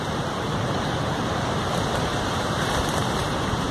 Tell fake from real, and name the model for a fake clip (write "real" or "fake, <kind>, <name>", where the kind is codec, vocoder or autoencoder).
fake, vocoder, BigVGAN v2